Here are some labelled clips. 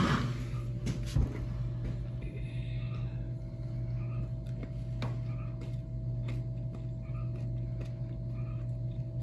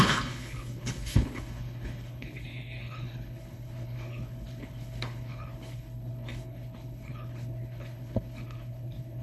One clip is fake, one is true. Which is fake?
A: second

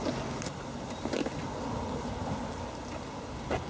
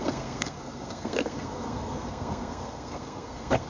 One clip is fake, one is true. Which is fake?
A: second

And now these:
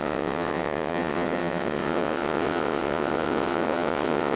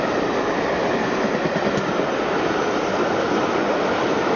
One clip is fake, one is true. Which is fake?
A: first